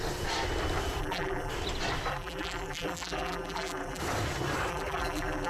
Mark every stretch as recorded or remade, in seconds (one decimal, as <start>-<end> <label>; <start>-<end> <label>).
0.0-1.0 recorded; 1.0-1.5 remade; 1.5-2.1 recorded; 2.1-4.0 remade; 4.0-4.7 recorded; 4.7-5.5 remade